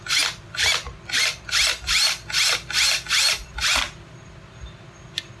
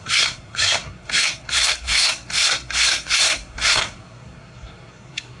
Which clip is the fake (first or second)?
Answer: second